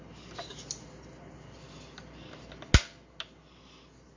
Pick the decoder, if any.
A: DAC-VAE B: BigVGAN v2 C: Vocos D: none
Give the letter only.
D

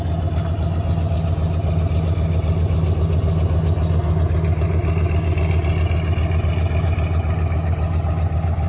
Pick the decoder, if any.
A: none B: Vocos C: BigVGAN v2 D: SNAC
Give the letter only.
A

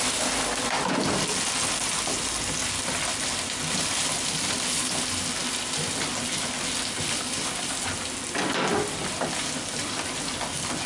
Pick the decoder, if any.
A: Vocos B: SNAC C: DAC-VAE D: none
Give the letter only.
D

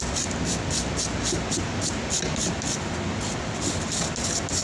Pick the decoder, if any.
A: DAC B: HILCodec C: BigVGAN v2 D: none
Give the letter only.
D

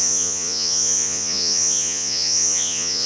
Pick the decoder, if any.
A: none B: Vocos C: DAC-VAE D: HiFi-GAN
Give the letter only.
B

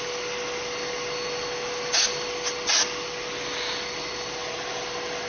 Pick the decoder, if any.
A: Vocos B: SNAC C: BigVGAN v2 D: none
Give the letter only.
D